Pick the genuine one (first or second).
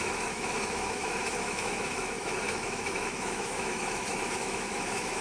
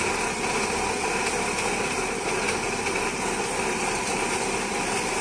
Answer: second